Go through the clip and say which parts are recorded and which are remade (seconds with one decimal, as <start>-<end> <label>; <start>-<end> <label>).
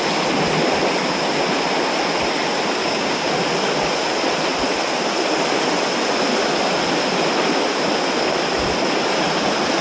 0.0-2.8 recorded; 2.8-3.3 remade; 3.3-9.8 recorded